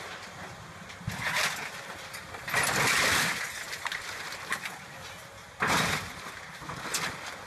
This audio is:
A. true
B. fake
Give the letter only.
A